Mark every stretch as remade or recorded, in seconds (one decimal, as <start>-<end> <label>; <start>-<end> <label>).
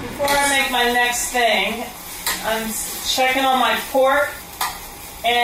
0.0-1.2 recorded; 1.2-4.4 remade; 4.4-5.4 recorded